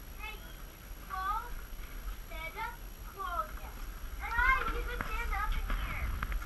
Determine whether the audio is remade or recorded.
recorded